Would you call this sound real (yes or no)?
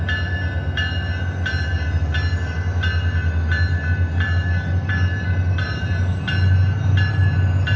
yes